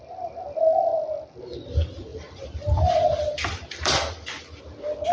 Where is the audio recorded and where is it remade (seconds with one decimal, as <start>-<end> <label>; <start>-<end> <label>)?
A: 0.0-2.1 recorded; 2.1-4.6 remade; 4.6-5.1 recorded